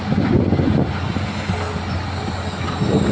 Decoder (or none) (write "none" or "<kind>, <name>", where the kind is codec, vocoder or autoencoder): none